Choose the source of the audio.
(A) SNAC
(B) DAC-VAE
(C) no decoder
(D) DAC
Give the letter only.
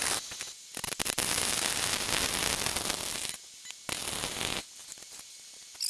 C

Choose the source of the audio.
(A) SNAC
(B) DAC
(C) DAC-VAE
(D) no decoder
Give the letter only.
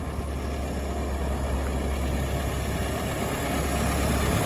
D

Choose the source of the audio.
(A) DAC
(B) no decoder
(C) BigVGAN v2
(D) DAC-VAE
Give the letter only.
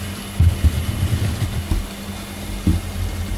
B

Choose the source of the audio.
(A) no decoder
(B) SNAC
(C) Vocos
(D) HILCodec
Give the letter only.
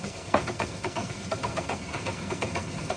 B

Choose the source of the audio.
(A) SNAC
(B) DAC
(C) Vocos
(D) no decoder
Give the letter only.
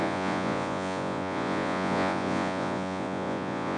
C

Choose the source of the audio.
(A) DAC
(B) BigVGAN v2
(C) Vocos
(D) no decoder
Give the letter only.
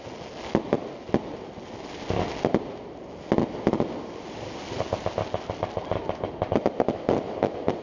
D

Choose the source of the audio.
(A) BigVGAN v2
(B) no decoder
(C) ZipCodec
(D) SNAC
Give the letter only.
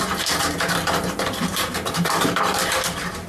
A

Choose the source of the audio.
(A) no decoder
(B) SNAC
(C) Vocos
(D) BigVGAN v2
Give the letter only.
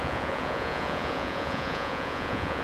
C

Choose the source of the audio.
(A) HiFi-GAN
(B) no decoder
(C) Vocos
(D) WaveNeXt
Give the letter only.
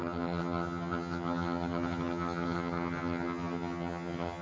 A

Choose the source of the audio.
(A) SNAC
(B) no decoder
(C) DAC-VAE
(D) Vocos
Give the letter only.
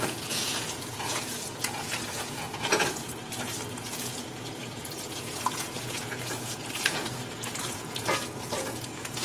D